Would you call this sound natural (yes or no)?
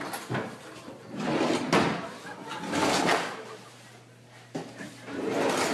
yes